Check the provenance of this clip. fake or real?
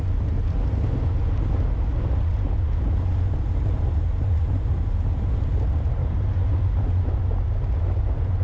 real